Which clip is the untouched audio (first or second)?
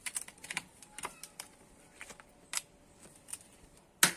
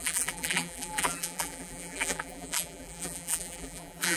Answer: first